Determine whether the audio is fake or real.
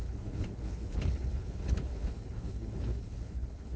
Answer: fake